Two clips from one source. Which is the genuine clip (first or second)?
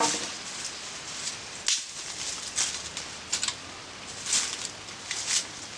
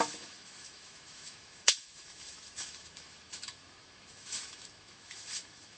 first